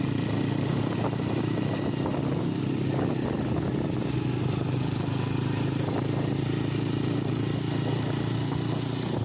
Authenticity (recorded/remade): recorded